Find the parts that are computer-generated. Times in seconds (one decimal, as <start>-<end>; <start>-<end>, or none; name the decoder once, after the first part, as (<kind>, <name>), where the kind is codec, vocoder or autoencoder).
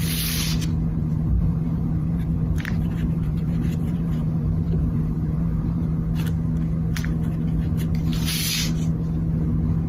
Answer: 1.0-5.9 (vocoder, BigVGAN v2)